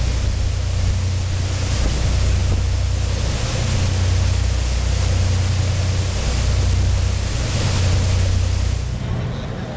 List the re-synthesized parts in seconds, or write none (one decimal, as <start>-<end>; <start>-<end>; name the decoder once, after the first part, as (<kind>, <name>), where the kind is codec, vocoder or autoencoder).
none